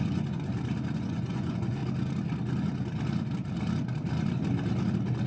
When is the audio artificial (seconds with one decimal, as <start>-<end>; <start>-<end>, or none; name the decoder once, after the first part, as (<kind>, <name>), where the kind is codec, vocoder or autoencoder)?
0.0-0.5 (vocoder, Vocos); 1.0-1.8